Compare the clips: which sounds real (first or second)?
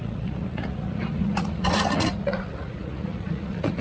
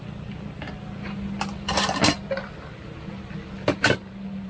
second